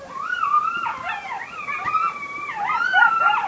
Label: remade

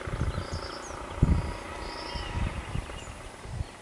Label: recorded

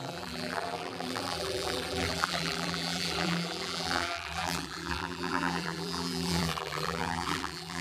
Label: remade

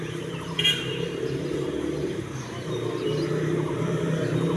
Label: remade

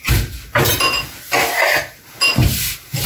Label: recorded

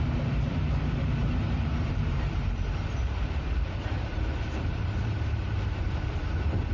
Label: remade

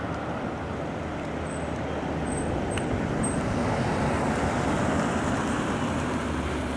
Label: recorded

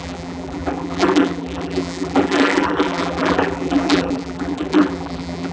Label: remade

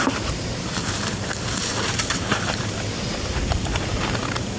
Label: remade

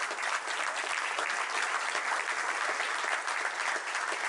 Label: recorded